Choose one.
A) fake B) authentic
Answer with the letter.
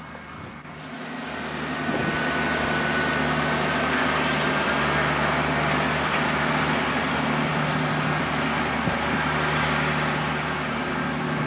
B